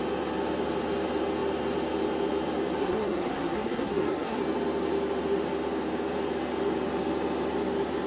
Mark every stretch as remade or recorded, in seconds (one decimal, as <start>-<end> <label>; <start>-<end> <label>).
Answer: 0.0-2.8 recorded; 2.8-4.4 remade; 4.4-8.1 recorded